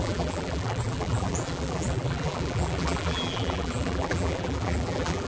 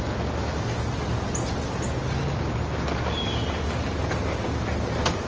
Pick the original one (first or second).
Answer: second